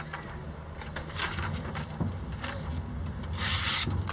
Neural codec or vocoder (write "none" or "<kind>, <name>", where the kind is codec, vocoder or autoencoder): none